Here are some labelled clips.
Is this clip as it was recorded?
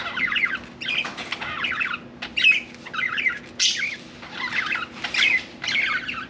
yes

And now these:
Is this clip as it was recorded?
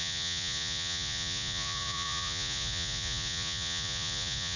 no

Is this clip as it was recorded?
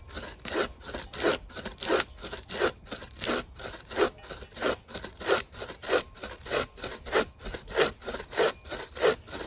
yes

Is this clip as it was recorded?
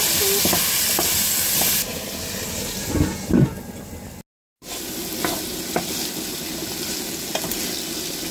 yes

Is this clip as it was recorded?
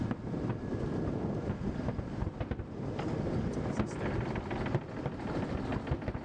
yes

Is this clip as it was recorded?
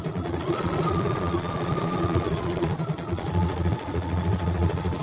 no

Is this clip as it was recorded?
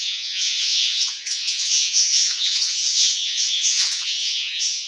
no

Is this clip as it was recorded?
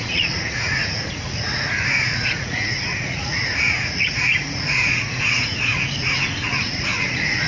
no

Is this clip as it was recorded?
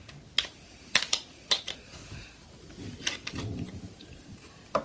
yes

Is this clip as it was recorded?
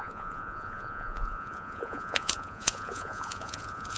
no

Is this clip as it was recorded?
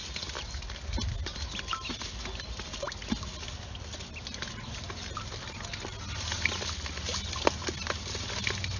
yes